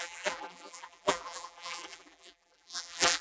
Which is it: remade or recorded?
remade